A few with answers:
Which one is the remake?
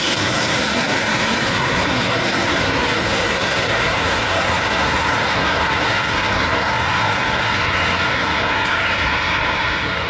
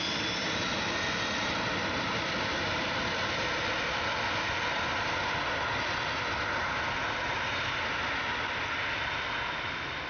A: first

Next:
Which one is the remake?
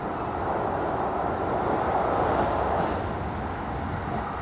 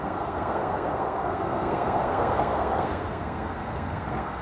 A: second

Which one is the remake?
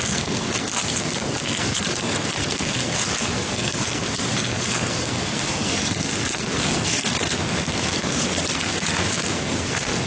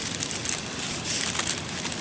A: first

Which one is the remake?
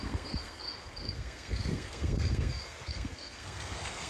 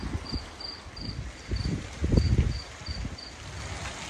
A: first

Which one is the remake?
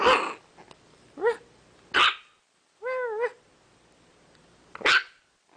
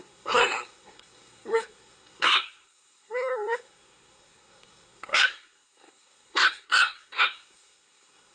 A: second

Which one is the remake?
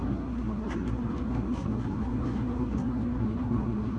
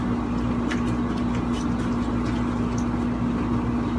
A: first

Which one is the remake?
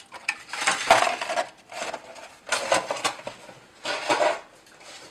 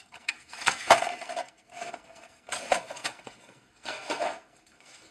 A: second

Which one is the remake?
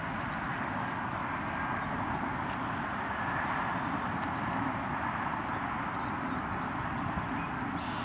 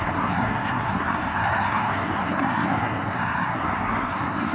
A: second